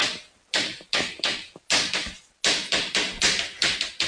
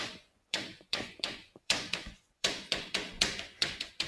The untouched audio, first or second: first